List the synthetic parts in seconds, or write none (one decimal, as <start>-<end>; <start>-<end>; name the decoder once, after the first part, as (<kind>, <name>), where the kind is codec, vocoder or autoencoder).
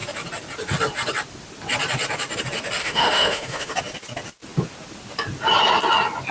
2.8-3.7 (autoencoder, DAC-VAE)